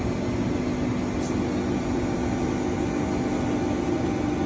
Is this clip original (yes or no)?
yes